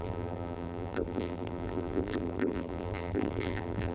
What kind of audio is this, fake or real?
fake